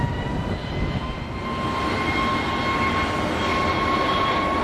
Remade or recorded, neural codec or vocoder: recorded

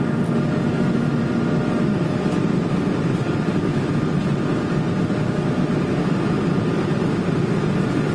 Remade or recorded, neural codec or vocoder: recorded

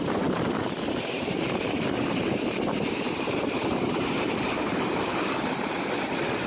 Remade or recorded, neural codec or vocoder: remade, vocoder, BigVGAN v2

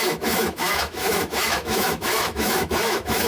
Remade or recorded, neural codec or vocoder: remade, autoencoder, DAC-VAE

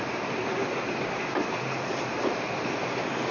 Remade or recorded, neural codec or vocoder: recorded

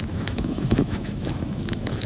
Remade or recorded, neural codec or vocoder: remade, autoencoder, DAC-VAE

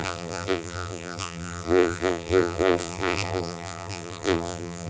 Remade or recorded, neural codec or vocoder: remade, vocoder, BigVGAN v2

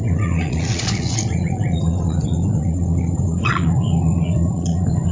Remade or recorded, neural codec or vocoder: remade, vocoder, Vocos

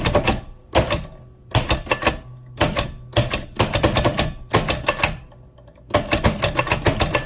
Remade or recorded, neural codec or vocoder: recorded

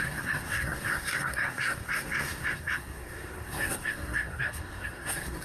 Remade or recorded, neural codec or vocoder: remade, codec, SNAC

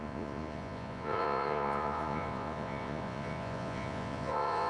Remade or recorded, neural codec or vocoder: remade, vocoder, Vocos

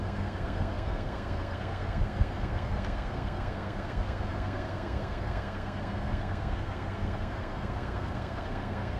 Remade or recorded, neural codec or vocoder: remade, codec, SNAC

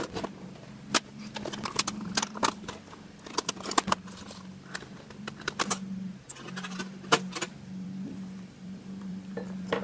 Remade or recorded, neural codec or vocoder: remade, vocoder, BigVGAN v2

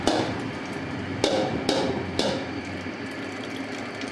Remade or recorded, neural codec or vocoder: remade, vocoder, BigVGAN v2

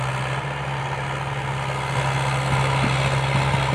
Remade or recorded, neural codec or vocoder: recorded